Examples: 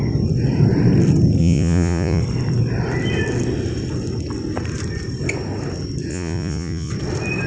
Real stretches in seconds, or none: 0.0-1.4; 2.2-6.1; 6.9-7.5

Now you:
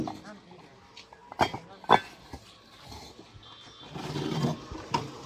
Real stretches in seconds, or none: 0.0-5.3